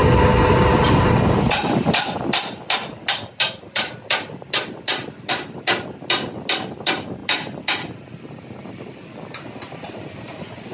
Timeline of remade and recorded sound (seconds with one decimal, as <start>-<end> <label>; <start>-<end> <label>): 0.0-10.7 recorded